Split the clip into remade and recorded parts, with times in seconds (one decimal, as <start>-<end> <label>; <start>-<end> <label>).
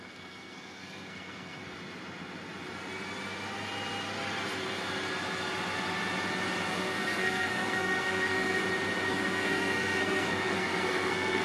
0.0-1.6 remade; 1.6-6.7 recorded; 6.7-8.6 remade; 8.6-9.1 recorded; 9.1-11.4 remade